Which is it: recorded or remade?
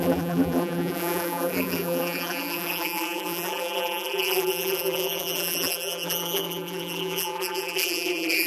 remade